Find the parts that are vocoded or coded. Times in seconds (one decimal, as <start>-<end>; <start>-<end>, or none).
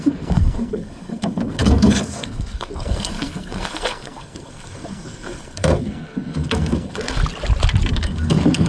0.0-7.2; 7.9-8.7